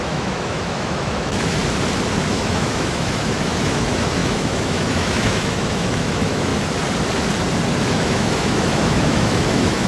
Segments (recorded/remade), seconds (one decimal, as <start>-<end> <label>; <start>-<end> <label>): 0.0-1.6 remade; 1.6-2.3 recorded; 2.3-6.5 remade; 6.5-7.9 recorded; 7.9-9.9 remade

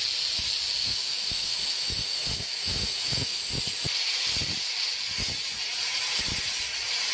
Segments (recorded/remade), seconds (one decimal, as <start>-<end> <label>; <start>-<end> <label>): 0.0-0.8 recorded; 0.8-3.5 remade; 3.5-7.1 recorded